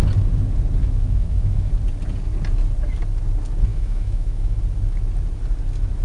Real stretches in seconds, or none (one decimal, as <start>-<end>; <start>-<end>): 0.0-0.8; 1.7-3.7; 4.6-6.0